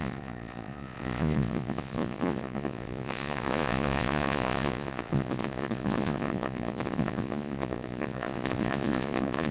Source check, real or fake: fake